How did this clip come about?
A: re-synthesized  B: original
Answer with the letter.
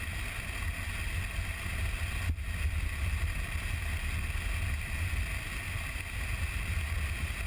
B